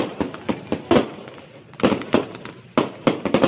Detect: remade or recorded recorded